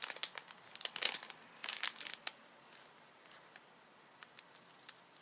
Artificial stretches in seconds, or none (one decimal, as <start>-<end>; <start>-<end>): none